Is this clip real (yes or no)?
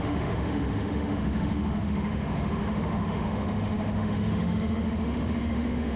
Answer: no